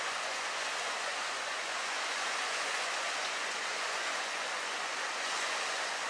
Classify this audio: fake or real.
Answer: fake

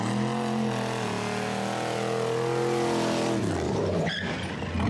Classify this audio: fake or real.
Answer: real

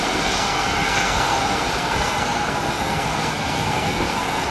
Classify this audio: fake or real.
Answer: fake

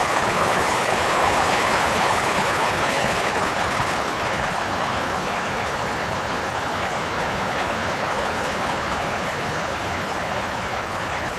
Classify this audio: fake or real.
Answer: fake